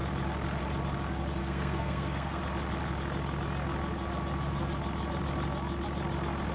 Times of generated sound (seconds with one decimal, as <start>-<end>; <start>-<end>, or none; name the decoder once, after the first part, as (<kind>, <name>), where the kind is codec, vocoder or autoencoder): 1.4-2.4 (codec, SNAC)